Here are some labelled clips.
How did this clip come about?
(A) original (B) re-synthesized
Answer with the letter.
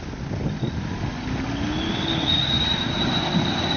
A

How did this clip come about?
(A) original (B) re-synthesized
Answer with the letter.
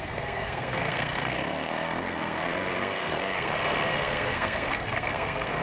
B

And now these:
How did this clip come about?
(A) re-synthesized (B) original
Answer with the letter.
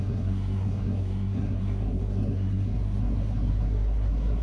A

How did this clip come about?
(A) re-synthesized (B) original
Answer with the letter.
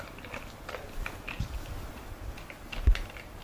B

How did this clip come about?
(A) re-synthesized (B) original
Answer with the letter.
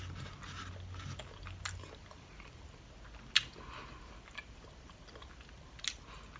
B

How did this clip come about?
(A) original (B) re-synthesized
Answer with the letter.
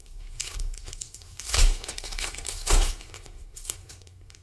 B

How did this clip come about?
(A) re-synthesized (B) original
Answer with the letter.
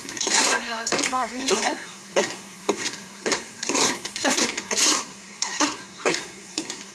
A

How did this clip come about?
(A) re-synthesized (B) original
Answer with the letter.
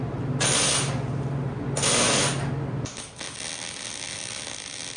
B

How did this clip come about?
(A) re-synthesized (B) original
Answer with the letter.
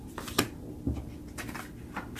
B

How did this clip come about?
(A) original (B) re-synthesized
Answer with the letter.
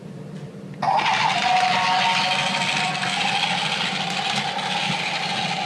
A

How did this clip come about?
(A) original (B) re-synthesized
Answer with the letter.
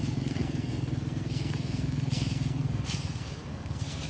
B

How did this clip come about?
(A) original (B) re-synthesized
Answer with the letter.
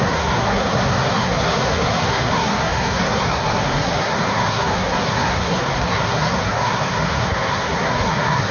B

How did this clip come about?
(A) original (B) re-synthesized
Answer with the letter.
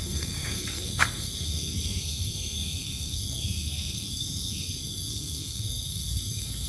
B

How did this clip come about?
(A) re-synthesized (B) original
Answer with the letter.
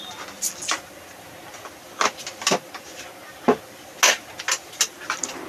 B